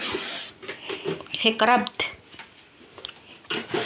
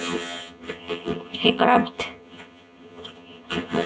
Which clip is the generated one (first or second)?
second